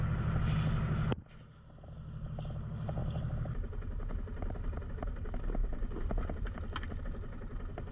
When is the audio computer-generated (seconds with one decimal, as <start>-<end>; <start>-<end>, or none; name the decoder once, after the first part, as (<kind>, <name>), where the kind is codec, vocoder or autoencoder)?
none

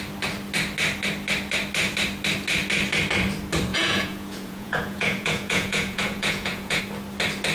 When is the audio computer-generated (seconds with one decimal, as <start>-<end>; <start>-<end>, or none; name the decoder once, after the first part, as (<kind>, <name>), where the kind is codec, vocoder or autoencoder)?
3.7-6.8 (vocoder, Vocos)

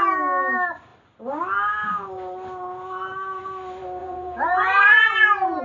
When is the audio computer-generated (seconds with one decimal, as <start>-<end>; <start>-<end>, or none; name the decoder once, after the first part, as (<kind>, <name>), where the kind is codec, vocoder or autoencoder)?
4.0-5.6 (vocoder, Vocos)

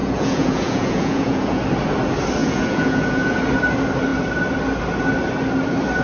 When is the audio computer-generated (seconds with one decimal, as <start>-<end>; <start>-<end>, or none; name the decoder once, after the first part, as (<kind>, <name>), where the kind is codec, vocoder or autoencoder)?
0.0-1.6 (vocoder, Vocos); 2.4-3.4

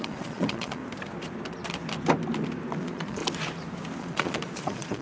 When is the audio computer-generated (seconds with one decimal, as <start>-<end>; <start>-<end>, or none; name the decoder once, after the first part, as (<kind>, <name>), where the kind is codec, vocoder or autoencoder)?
0.0-0.8 (vocoder, Vocos); 2.8-3.2; 4.0-5.0

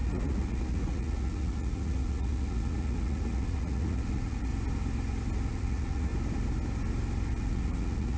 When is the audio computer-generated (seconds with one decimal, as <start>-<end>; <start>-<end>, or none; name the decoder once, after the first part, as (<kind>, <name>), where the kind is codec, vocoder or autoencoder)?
0.0-4.5 (vocoder, Vocos); 5.5-6.1; 7.3-8.2